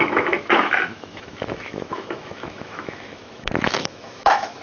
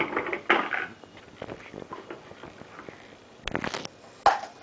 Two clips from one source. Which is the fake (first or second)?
first